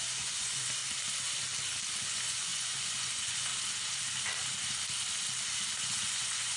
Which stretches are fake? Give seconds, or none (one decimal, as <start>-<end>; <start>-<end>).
0.0-0.8; 2.0-3.5; 5.8-6.6